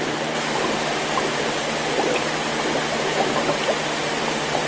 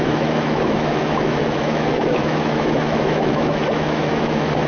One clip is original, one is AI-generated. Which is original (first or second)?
first